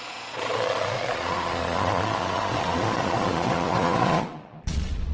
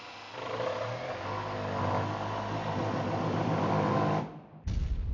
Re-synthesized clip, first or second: first